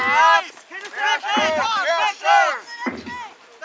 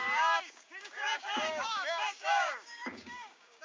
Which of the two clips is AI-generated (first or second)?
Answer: second